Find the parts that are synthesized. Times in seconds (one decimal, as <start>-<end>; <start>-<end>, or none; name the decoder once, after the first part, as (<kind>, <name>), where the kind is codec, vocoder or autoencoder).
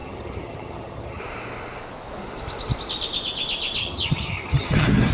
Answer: 0.0-1.2 (vocoder, HiFi-GAN); 3.8-5.1